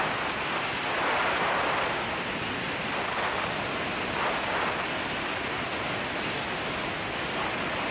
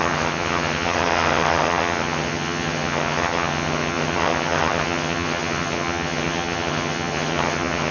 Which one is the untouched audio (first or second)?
first